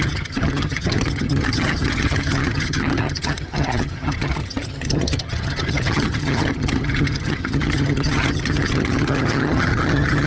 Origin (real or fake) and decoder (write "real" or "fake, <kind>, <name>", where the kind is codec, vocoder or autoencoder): fake, vocoder, HiFi-GAN